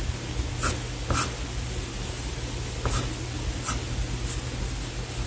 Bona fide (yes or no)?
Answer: yes